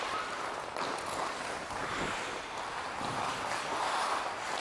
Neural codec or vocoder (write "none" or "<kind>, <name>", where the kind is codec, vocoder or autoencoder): none